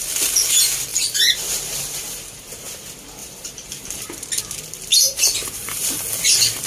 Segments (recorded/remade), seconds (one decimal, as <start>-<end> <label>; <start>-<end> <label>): 0.0-0.9 recorded; 0.9-2.5 remade; 2.5-3.2 recorded; 3.2-4.4 remade; 4.4-4.9 recorded; 4.9-6.0 remade; 6.0-6.7 recorded